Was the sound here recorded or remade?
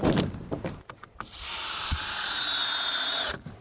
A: remade